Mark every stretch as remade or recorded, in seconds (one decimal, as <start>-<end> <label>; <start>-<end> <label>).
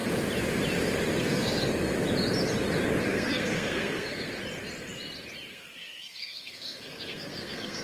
0.0-1.2 recorded; 1.2-1.7 remade; 1.7-3.0 recorded; 3.0-4.3 remade; 4.3-5.5 recorded; 5.5-7.8 remade